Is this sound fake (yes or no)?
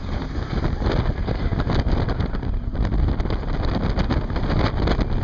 no